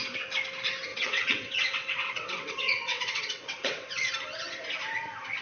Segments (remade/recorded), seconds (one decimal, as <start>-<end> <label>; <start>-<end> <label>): 0.0-0.9 recorded; 0.9-4.1 remade; 4.1-5.4 recorded

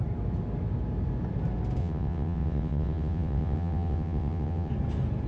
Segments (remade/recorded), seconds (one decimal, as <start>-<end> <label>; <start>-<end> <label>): 0.0-1.8 recorded; 1.8-4.7 remade; 4.7-5.3 recorded

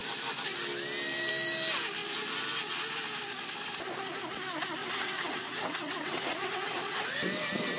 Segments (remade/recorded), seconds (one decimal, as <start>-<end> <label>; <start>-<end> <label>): 0.0-4.8 recorded; 4.8-7.2 remade; 7.2-7.8 recorded

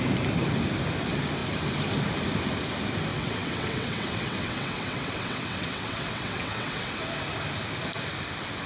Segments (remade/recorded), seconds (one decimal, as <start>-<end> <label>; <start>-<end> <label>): 0.0-3.1 recorded; 3.1-7.0 remade; 7.0-8.7 recorded

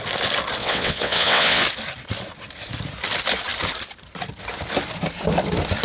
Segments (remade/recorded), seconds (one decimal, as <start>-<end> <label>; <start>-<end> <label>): 0.0-0.6 recorded; 0.6-1.6 remade; 1.6-5.8 recorded

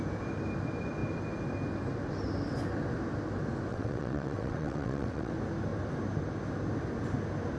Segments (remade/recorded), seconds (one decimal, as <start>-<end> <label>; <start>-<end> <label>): 0.0-3.7 recorded; 3.7-5.3 remade; 5.3-7.6 recorded

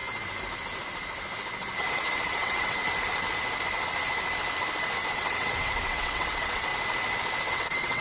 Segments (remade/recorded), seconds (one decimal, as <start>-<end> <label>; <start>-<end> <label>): 0.0-1.9 recorded; 1.9-2.8 remade; 2.8-5.1 recorded; 5.1-6.7 remade; 6.7-7.5 recorded; 7.5-8.0 remade